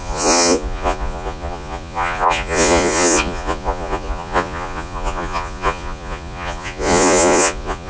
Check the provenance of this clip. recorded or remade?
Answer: remade